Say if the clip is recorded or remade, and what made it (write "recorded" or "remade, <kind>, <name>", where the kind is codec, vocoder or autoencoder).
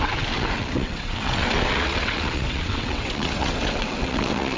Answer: remade, vocoder, WaveNeXt